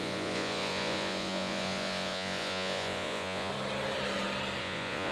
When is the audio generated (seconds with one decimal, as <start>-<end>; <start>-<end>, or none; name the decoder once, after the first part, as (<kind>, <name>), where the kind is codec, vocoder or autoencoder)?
0.0-3.5 (vocoder, Vocos); 4.6-5.1